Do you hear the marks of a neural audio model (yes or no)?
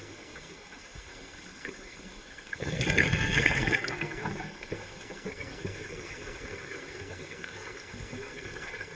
yes